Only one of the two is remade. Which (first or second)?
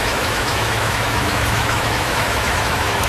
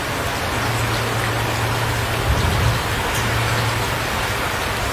first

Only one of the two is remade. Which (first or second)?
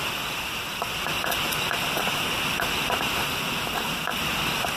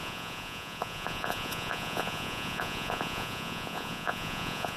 second